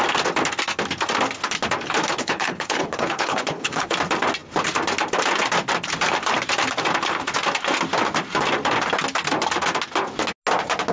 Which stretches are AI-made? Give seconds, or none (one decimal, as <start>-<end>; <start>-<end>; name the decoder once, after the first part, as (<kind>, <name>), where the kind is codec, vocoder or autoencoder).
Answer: 2.2-3.9 (codec, HILCodec)